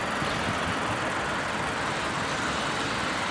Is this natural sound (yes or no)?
yes